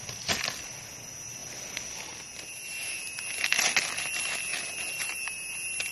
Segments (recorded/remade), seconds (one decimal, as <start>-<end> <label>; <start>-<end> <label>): 0.0-5.9 recorded